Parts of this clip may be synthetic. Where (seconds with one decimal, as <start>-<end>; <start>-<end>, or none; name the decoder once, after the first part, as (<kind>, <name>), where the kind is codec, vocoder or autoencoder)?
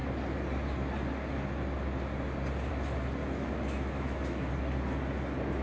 3.2-4.5 (autoencoder, DAC-VAE)